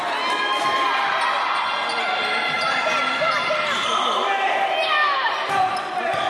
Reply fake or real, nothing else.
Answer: real